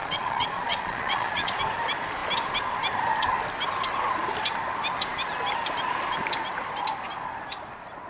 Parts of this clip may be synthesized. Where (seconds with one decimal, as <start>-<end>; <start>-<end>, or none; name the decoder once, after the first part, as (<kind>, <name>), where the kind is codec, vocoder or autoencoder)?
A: 0.0-1.6 (vocoder, Vocos)